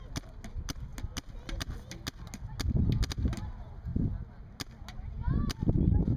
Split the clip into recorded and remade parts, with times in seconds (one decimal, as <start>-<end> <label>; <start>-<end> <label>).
0.0-6.2 recorded